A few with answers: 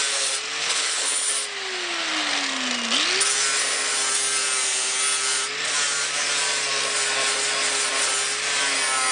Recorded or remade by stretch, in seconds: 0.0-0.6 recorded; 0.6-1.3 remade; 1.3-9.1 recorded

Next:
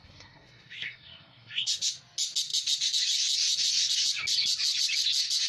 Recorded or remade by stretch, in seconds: 0.0-1.9 remade; 1.9-5.5 recorded

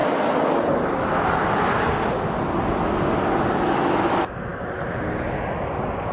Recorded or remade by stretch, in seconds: 0.0-6.1 recorded

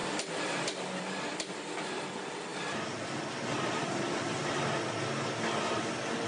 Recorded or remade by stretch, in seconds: 0.0-6.3 recorded